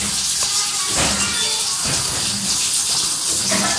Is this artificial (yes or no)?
no